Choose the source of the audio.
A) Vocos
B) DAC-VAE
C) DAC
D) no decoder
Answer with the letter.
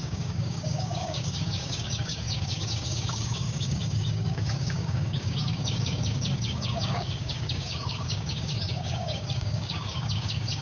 C